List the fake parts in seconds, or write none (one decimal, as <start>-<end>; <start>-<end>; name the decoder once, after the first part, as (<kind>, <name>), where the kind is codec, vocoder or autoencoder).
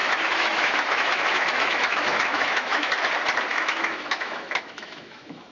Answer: 0.0-2.9 (autoencoder, DAC-VAE); 3.5-5.5